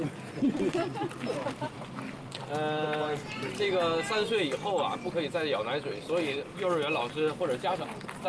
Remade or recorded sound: recorded